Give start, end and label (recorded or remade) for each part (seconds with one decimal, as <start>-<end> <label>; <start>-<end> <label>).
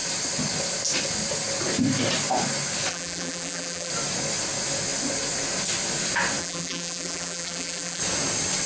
0.0-2.9 recorded; 2.9-3.9 remade; 3.9-6.4 recorded; 6.4-8.0 remade; 8.0-8.7 recorded